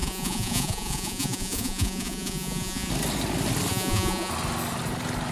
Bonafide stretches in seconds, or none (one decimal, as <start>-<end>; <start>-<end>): 2.9-3.7; 4.3-5.3